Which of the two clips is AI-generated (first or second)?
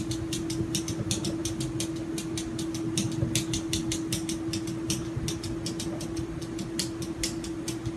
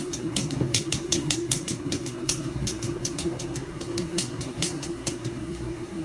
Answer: second